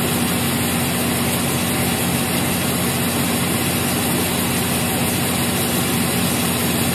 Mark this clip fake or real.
real